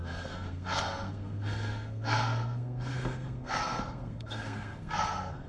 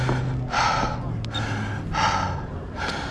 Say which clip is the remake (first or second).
first